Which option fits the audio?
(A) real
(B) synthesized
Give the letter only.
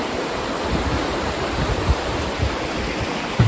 A